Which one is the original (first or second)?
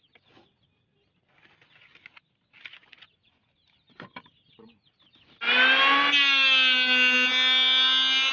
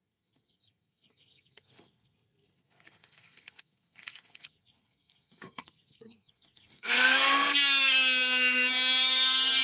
first